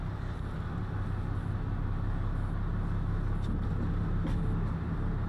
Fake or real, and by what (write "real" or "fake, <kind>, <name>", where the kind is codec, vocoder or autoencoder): real